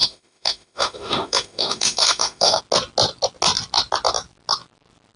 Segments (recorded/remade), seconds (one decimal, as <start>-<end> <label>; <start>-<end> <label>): 0.0-2.6 remade; 2.6-5.2 recorded